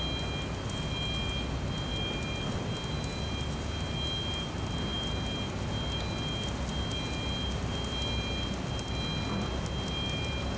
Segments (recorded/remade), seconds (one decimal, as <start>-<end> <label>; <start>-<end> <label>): 0.0-10.6 recorded